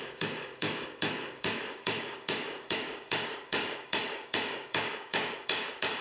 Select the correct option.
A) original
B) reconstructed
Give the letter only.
B